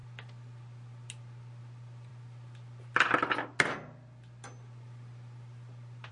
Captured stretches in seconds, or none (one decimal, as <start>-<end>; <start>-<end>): 0.0-6.1

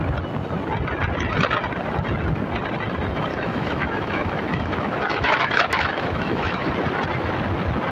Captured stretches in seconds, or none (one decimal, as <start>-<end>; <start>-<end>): 0.0-3.3; 6.7-7.9

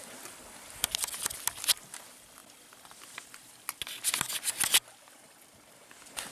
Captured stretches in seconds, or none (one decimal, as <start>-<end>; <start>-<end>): 0.0-6.3